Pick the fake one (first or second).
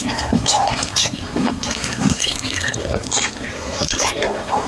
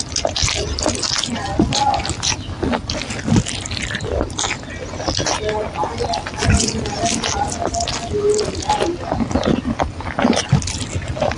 first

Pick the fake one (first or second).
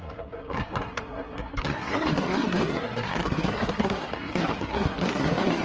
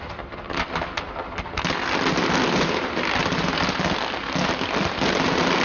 first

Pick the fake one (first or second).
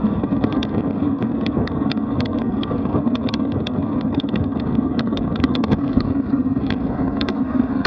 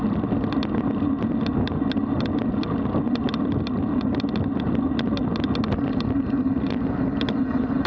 first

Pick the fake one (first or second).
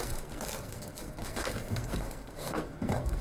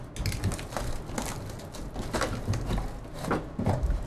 first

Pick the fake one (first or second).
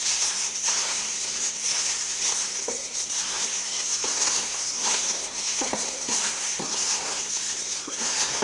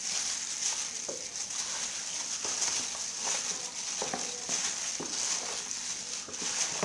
first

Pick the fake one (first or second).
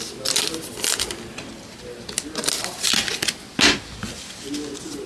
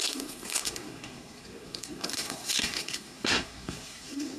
second